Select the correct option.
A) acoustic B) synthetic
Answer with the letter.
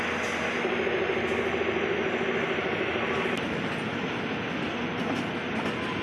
A